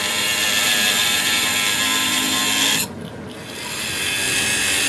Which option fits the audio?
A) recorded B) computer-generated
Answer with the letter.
A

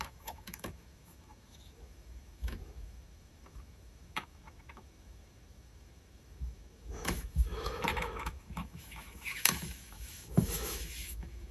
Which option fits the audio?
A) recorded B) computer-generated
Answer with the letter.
B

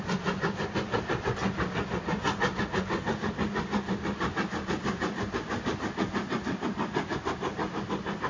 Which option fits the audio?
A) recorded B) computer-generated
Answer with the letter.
A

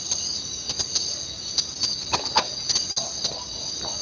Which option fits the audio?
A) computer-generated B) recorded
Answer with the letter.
B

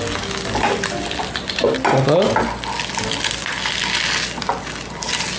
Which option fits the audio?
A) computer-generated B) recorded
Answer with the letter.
B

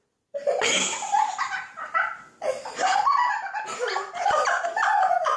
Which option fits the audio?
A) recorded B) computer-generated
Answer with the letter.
A